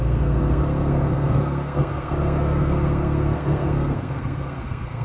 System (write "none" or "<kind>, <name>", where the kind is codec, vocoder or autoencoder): codec, SNAC